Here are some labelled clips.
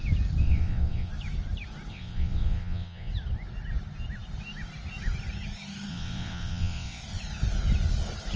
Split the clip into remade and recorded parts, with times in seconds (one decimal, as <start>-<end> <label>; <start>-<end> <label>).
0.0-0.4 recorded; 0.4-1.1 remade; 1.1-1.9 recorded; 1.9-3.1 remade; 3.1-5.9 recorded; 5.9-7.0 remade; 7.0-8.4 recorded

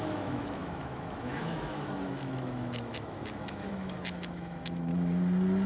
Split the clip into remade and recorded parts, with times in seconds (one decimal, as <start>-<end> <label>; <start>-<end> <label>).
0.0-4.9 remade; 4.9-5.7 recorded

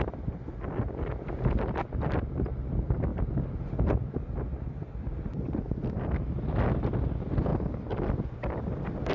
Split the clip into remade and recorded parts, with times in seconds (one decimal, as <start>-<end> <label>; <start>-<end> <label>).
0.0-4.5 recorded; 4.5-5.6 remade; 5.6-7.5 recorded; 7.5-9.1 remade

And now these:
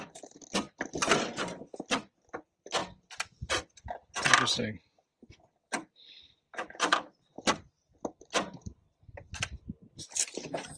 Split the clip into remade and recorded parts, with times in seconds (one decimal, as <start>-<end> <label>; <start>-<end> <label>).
0.0-2.8 remade; 2.8-4.5 recorded; 4.5-10.8 remade

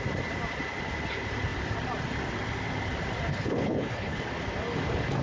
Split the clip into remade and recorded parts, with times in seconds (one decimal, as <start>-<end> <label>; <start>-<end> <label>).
0.0-3.3 recorded; 3.3-4.2 remade; 4.2-5.2 recorded

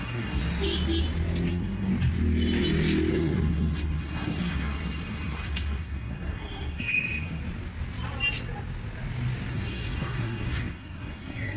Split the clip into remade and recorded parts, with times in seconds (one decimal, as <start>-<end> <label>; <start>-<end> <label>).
0.0-0.4 remade; 0.4-1.5 recorded; 1.5-1.9 remade; 1.9-3.1 recorded; 3.1-7.4 remade; 7.4-9.5 recorded; 9.5-11.6 remade